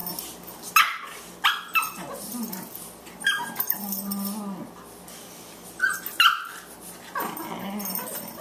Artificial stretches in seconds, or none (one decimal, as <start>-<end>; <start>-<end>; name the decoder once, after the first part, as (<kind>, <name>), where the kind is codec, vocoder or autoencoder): none